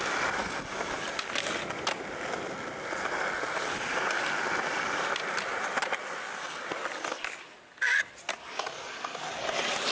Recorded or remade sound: recorded